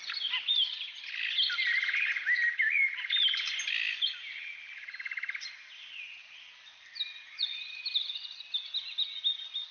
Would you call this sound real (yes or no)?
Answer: yes